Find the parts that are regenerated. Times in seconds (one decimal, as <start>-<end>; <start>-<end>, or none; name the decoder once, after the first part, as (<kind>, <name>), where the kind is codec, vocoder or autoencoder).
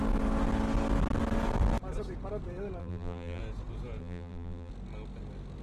2.8-3.4 (vocoder, BigVGAN v2); 4.0-4.7